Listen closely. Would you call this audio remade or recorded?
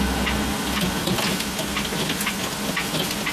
recorded